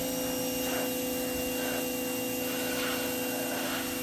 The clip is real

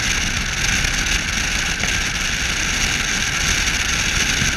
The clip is real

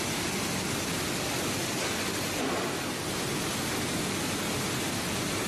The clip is real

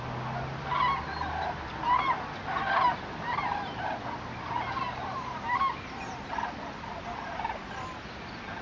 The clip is real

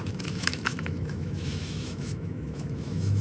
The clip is fake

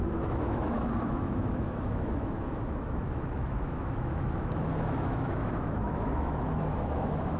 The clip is fake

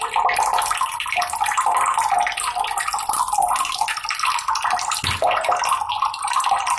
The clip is real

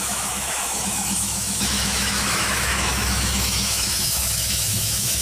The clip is fake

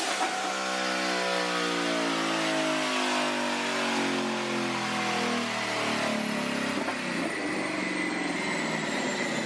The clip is real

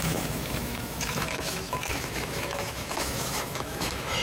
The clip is fake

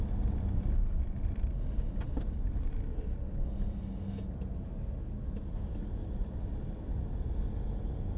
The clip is real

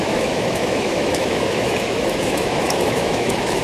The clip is fake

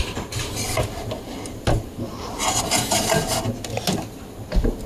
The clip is real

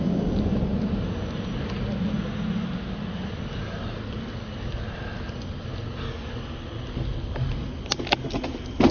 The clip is real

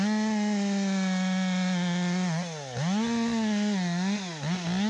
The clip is real